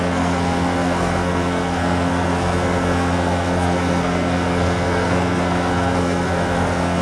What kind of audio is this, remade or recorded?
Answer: remade